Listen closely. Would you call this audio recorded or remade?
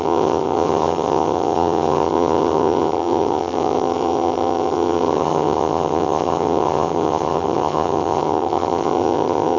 remade